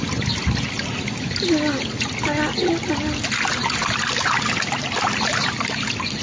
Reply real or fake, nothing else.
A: real